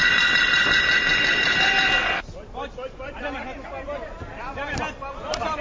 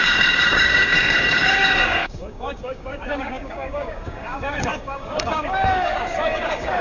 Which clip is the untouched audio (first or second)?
first